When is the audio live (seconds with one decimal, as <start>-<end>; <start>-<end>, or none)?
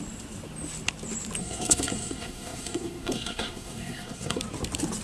0.0-1.4; 4.4-5.0